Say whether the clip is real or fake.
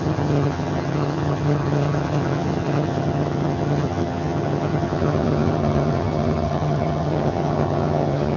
fake